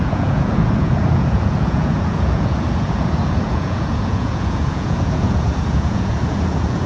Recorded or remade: remade